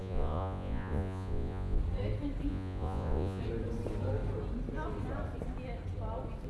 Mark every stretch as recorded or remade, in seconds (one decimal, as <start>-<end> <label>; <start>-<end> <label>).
0.0-1.8 remade; 1.8-2.5 recorded; 2.5-3.4 remade; 3.4-6.5 recorded